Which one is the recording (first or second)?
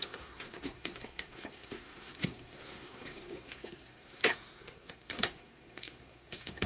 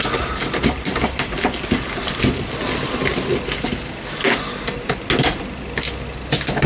second